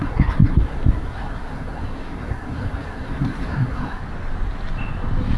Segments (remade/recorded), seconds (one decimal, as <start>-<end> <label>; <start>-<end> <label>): 0.0-4.0 remade; 4.0-5.4 recorded